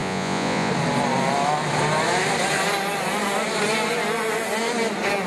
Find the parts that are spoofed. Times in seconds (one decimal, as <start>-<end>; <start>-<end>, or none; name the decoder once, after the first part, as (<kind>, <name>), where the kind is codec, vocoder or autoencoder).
0.0-0.7 (vocoder, Vocos)